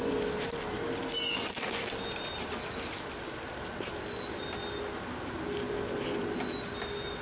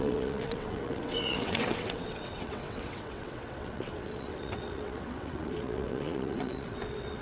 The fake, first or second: second